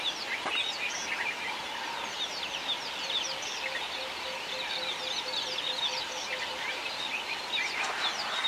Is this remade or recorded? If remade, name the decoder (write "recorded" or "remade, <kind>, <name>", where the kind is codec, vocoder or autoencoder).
recorded